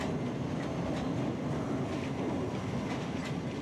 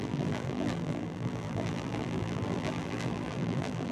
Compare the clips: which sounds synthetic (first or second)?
second